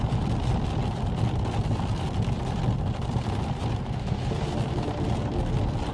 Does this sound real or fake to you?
real